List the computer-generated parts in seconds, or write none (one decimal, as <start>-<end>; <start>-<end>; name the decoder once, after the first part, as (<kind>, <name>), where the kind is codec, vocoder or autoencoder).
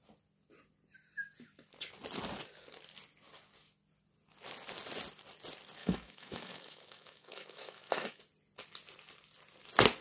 5.8-8.2 (autoencoder, DAC-VAE)